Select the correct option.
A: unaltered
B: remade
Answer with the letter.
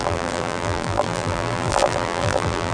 B